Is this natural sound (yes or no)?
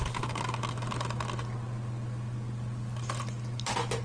yes